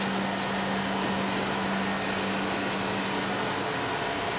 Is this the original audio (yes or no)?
yes